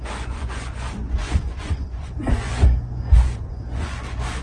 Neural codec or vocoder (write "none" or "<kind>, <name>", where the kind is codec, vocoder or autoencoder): vocoder, Vocos